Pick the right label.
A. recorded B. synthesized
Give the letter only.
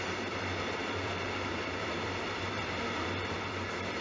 B